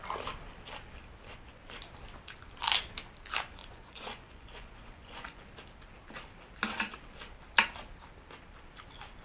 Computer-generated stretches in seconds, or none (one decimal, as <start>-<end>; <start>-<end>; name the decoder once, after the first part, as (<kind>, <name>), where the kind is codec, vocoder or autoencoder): 3.6-5.4 (vocoder, Vocos)